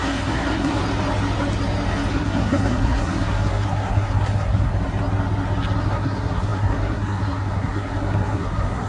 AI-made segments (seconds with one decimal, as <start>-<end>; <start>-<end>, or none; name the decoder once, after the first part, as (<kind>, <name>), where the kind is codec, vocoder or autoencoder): 0.0-0.8 (codec, SNAC); 2.1-4.7; 5.8-8.9